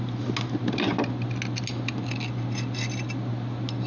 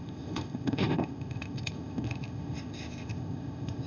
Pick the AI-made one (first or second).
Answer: second